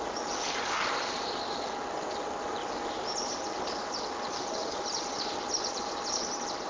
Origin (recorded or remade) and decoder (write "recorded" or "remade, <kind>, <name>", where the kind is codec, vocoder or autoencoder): recorded